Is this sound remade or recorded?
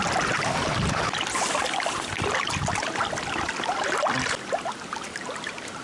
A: recorded